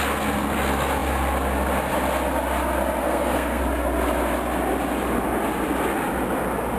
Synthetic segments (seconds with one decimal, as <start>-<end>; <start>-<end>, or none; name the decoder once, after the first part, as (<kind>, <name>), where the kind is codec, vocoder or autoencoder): 3.0-3.6 (codec, SNAC)